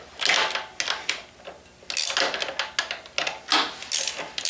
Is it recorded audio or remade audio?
recorded